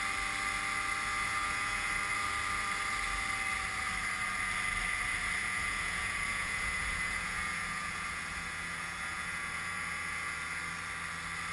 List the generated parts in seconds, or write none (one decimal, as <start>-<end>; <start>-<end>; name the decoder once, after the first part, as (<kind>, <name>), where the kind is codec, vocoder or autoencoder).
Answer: 1.1-1.9 (vocoder, Vocos); 5.4-10.6